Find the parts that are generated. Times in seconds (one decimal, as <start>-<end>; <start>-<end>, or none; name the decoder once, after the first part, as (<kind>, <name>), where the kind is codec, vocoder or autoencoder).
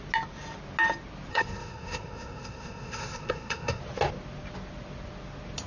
1.3-3.8 (codec, SNAC)